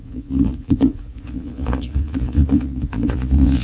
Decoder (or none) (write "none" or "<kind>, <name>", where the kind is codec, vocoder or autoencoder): vocoder, Vocos